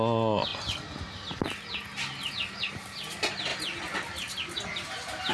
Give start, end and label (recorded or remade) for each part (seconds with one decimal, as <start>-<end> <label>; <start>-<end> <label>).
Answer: 0.0-5.3 recorded